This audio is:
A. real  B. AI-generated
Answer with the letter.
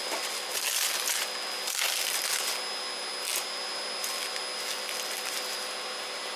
A